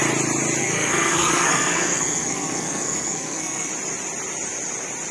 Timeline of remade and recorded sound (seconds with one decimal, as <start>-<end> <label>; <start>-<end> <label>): 0.0-0.6 recorded; 0.6-3.7 remade; 3.7-5.1 recorded